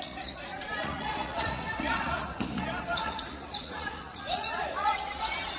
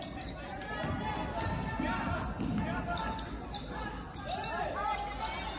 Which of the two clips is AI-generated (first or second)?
first